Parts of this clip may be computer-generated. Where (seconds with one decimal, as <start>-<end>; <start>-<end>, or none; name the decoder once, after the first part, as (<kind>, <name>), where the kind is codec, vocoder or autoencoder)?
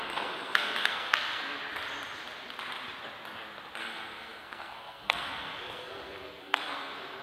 0.0-1.6 (codec, SNAC); 3.8-7.2